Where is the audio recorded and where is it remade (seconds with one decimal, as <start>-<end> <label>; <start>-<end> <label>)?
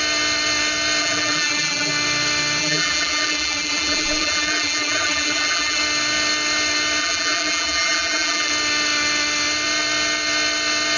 0.0-1.0 recorded; 1.0-1.9 remade; 1.9-2.6 recorded; 2.6-5.8 remade; 5.8-7.0 recorded; 7.0-8.5 remade; 8.5-11.0 recorded